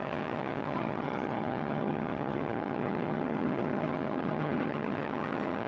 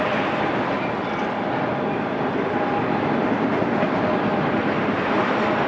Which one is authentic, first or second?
second